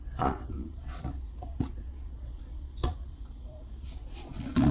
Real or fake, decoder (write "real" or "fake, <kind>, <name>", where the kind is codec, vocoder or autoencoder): fake, vocoder, Vocos